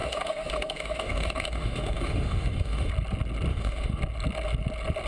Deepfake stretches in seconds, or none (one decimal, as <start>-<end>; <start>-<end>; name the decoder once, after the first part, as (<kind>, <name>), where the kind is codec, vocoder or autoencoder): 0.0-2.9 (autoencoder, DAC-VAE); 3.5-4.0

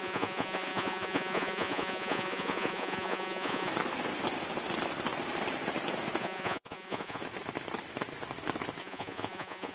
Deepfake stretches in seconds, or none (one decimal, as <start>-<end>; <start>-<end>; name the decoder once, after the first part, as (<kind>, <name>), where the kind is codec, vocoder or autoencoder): 0.0-3.7 (vocoder, Vocos); 6.2-7.2; 8.8-9.7

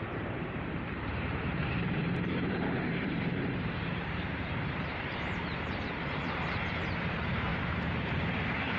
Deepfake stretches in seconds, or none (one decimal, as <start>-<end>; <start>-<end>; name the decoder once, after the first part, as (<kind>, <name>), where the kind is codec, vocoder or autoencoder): 0.0-8.8 (vocoder, BigVGAN v2)

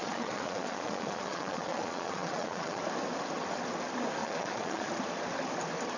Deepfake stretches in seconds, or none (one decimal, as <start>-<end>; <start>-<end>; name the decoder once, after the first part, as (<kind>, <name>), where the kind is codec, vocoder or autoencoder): 0.0-2.8 (vocoder, Vocos); 4.2-4.9